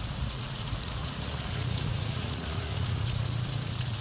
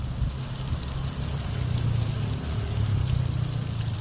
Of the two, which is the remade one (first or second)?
first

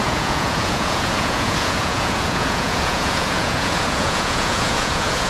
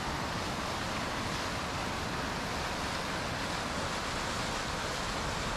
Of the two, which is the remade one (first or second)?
first